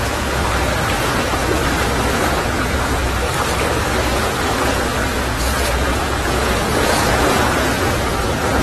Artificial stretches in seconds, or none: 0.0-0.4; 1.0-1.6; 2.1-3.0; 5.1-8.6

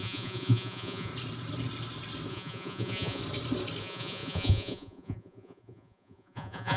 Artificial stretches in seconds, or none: 0.0-1.1; 2.3-3.2; 3.8-6.8

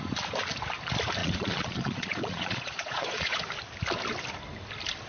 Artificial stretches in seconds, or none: 1.2-3.4

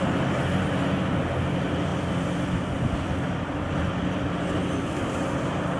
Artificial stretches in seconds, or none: none

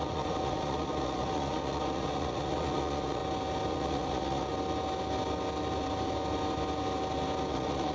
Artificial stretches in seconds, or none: 0.0-3.2; 3.7-4.5; 7.5-7.9

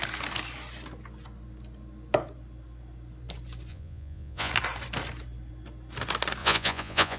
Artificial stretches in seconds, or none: 3.7-4.5; 6.4-7.2

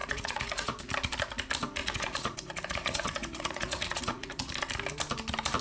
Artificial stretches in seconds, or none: 0.0-0.8; 1.8-4.5